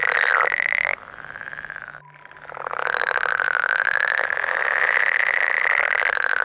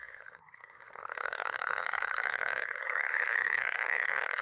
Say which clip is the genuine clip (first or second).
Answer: first